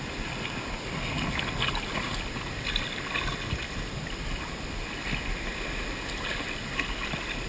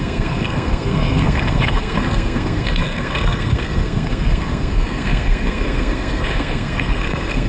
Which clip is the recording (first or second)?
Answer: first